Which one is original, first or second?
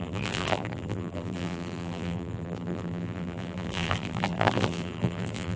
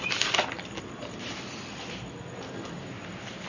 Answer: second